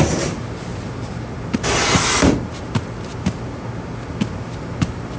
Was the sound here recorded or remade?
recorded